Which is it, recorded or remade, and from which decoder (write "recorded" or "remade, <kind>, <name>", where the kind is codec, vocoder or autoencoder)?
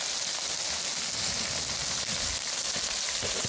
recorded